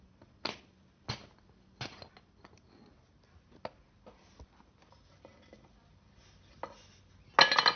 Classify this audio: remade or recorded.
recorded